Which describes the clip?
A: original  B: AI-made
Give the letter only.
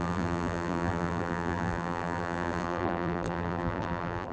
B